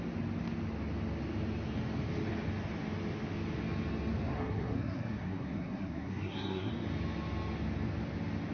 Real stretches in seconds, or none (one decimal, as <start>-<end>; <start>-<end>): 0.0-4.3; 6.7-8.5